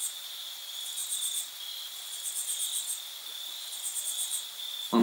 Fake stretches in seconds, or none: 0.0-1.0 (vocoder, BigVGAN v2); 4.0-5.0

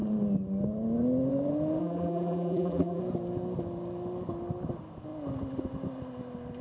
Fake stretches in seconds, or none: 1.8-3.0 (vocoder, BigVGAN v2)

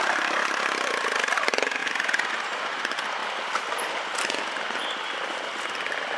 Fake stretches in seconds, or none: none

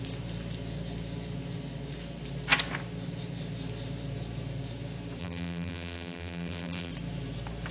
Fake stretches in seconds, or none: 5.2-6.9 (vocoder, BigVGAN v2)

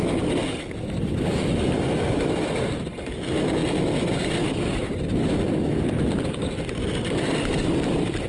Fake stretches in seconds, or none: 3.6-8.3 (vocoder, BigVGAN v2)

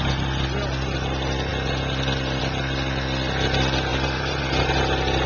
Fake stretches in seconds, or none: 3.9-4.4 (vocoder, BigVGAN v2)